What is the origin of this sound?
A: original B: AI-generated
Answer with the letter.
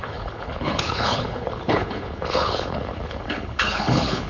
B